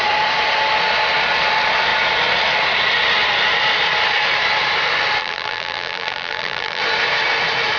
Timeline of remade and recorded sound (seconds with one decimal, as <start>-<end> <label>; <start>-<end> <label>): 0.0-5.2 recorded; 5.2-6.8 remade; 6.8-7.8 recorded